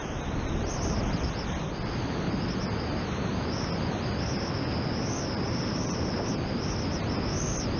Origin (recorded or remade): recorded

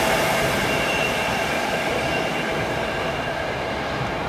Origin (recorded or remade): recorded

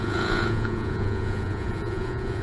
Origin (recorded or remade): remade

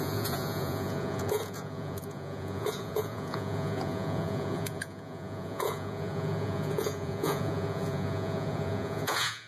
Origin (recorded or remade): remade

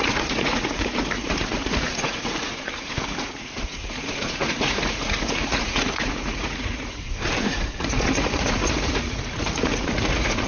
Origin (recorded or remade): remade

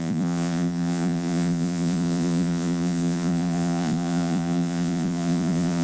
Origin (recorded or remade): remade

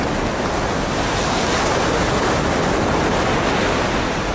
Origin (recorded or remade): recorded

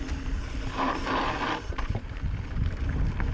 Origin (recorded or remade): recorded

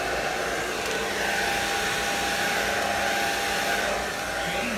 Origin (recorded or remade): recorded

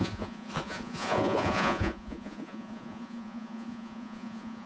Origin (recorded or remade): remade